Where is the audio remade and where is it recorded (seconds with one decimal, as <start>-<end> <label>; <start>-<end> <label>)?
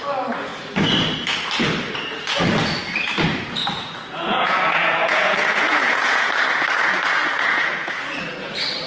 0.0-3.6 recorded; 3.6-6.3 remade; 6.3-7.2 recorded; 7.2-8.0 remade; 8.0-8.9 recorded